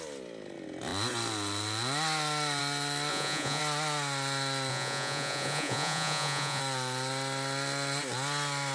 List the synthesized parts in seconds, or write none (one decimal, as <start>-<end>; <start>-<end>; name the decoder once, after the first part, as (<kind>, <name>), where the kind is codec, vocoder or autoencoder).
3.1-3.6 (vocoder, Vocos); 4.7-6.6